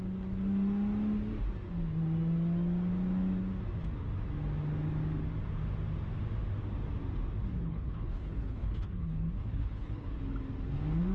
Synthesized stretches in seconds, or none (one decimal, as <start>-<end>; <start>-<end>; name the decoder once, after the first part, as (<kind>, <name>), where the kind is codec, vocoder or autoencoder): 7.5-10.2 (codec, HILCodec)